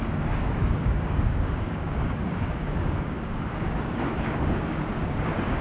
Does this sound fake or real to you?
fake